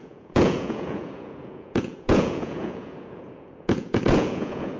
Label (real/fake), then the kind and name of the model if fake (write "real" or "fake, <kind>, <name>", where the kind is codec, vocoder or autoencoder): fake, vocoder, Vocos